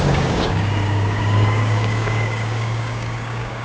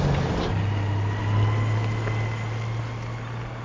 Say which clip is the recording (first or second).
second